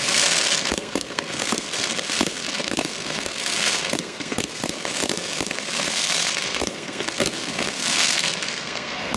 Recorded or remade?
remade